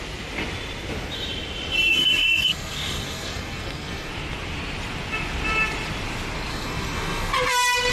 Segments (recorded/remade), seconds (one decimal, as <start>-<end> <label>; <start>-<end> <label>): 0.0-1.9 recorded; 1.9-4.1 remade; 4.1-6.5 recorded; 6.5-7.3 remade; 7.3-7.9 recorded